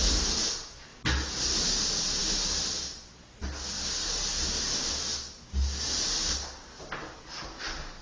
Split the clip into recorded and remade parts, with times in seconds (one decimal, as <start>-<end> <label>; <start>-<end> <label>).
0.0-8.0 recorded